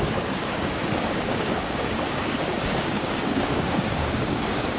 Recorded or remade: remade